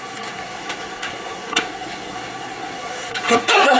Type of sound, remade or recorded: remade